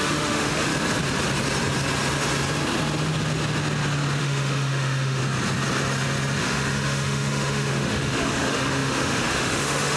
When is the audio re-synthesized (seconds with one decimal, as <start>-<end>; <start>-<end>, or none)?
0.0-0.7; 4.2-5.2; 6.4-10.0